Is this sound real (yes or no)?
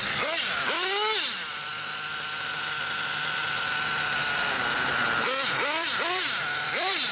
yes